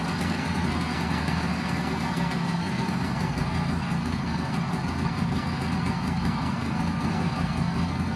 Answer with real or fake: fake